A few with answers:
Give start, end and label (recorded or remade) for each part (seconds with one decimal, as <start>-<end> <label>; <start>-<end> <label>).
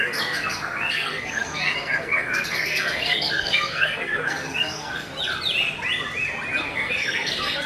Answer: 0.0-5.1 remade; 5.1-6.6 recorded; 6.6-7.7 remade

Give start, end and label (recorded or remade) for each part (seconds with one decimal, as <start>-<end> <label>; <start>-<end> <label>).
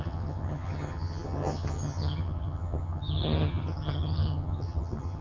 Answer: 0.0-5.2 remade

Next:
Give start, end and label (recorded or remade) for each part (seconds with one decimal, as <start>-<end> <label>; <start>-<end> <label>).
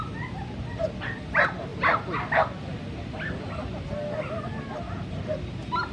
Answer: 0.0-5.9 recorded